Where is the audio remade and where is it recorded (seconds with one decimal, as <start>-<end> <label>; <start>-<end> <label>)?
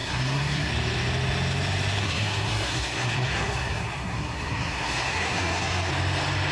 0.0-0.7 remade; 0.7-2.0 recorded; 2.0-5.9 remade; 5.9-6.5 recorded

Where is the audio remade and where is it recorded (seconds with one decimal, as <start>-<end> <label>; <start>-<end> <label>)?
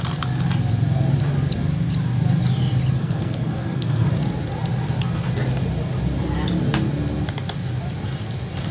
0.0-3.0 recorded; 3.0-4.1 remade; 4.1-8.7 recorded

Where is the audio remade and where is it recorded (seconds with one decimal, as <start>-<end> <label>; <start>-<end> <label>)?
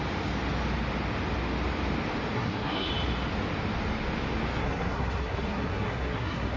0.0-2.3 recorded; 2.3-2.9 remade; 2.9-4.6 recorded; 4.6-6.6 remade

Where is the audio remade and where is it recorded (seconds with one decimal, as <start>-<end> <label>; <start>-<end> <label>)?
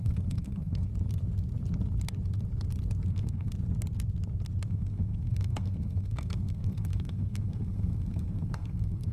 0.0-0.9 remade; 0.9-3.1 recorded; 3.1-3.5 remade; 3.5-4.7 recorded; 4.7-9.1 remade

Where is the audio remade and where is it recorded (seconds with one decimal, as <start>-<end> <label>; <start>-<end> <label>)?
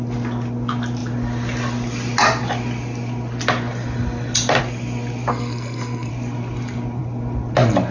0.0-5.3 recorded; 5.3-6.1 remade; 6.1-7.9 recorded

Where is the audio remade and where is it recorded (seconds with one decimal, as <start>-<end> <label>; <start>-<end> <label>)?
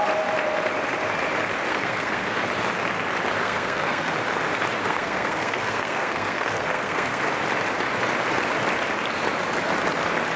0.0-1.7 recorded; 1.7-2.4 remade; 2.4-3.4 recorded; 3.4-4.1 remade; 4.1-4.8 recorded; 4.8-7.2 remade; 7.2-10.4 recorded